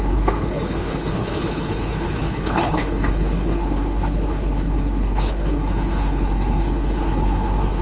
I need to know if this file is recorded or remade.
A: remade